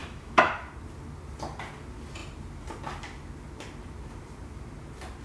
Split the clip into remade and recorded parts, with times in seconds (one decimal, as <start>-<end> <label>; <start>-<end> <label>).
0.0-0.5 remade; 0.5-5.2 recorded